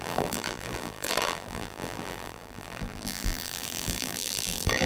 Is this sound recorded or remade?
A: remade